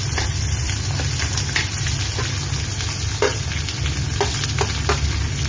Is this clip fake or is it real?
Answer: real